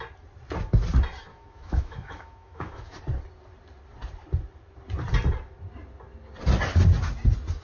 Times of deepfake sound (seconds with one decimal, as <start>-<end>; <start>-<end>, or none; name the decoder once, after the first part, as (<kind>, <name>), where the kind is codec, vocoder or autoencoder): 1.3-3.0 (autoencoder, DAC-VAE)